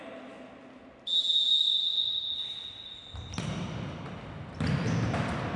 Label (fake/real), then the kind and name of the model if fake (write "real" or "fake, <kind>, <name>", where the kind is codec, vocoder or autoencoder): real